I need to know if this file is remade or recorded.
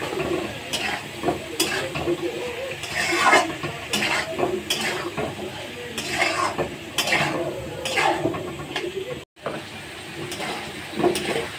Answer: recorded